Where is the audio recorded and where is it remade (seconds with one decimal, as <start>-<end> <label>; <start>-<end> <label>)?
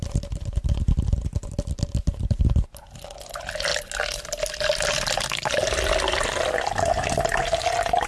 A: 0.0-8.1 recorded